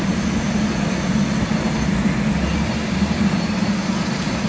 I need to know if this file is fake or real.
real